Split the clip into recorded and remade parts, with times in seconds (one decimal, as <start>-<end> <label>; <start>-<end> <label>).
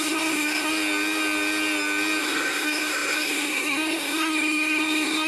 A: 0.0-0.7 remade; 0.7-2.2 recorded; 2.2-5.3 remade